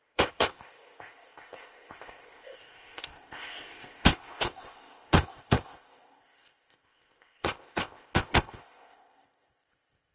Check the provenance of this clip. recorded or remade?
remade